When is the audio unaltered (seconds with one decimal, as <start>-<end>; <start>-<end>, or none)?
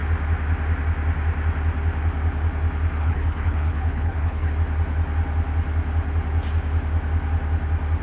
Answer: 0.0-3.0; 4.5-8.0